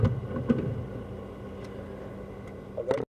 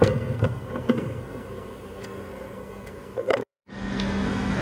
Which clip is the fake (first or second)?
second